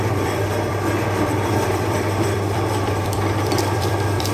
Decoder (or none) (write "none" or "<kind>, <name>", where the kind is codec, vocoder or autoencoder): vocoder, BigVGAN v2